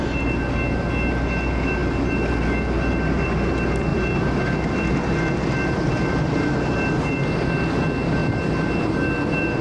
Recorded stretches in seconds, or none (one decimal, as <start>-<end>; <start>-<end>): 0.0-3.9; 7.2-8.2